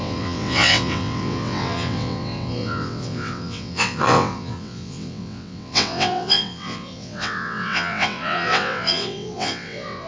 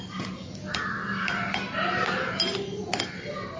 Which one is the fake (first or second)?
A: first